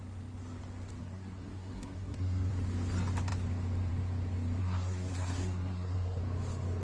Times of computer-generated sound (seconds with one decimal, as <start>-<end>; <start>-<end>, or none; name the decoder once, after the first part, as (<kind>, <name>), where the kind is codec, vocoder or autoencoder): 1.0-2.5 (codec, SNAC); 4.6-6.2